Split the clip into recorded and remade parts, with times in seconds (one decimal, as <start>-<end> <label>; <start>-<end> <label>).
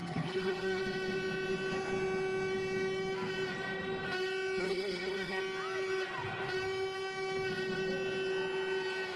0.0-0.8 remade; 0.8-4.6 recorded; 4.6-5.4 remade; 5.4-9.2 recorded